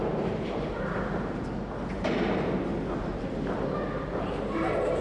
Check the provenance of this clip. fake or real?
real